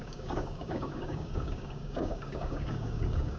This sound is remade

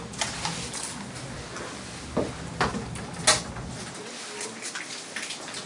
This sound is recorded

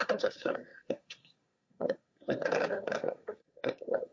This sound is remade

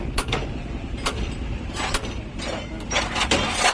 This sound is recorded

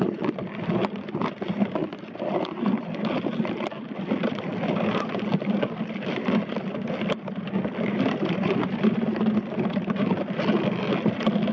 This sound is recorded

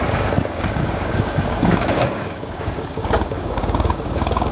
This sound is remade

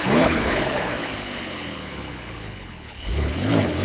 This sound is remade